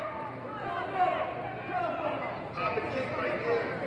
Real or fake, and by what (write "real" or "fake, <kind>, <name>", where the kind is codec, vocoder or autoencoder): real